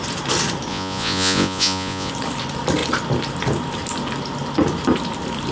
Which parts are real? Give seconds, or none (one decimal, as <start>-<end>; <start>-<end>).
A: 0.0-0.7; 2.1-5.5